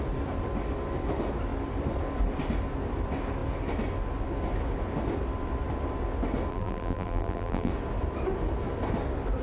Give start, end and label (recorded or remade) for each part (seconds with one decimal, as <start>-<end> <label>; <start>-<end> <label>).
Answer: 0.0-6.5 recorded; 6.5-7.7 remade; 7.7-9.4 recorded